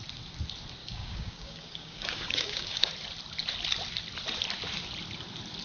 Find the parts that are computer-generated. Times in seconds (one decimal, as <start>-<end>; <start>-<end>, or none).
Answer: 0.8-2.9